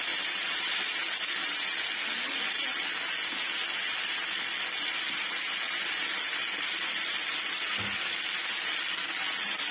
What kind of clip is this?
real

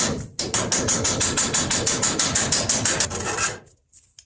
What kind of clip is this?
real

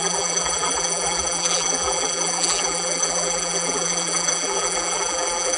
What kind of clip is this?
fake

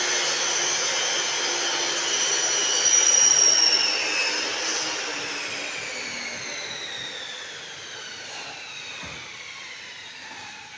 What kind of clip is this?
real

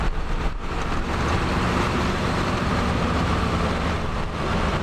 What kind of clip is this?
fake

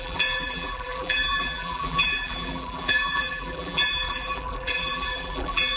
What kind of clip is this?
fake